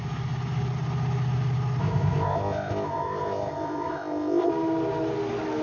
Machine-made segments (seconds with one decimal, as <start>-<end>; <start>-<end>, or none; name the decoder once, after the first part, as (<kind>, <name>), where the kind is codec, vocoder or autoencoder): 1.8-4.5 (codec, ZipCodec)